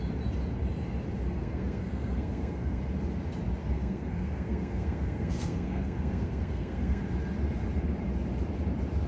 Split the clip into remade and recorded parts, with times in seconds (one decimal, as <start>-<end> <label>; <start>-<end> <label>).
0.0-1.4 recorded; 1.4-2.8 remade; 2.8-3.6 recorded; 3.6-7.0 remade; 7.0-9.1 recorded